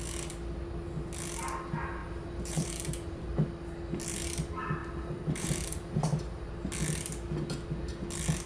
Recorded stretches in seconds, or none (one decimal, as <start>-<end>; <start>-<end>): 0.0-2.0; 3.2-4.8; 6.4-8.5

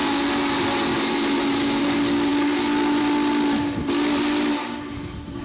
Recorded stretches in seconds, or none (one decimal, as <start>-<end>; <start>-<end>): 0.0-5.4

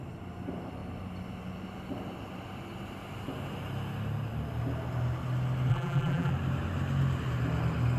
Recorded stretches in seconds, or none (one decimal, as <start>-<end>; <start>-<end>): 0.0-5.7; 6.3-8.0

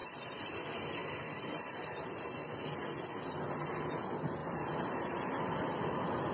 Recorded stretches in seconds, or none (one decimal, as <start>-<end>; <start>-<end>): 0.0-1.0; 2.1-4.4

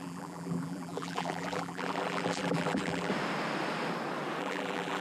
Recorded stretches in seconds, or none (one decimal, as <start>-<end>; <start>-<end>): 3.1-4.4